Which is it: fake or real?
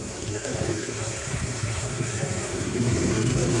fake